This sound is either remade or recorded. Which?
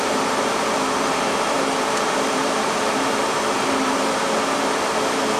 remade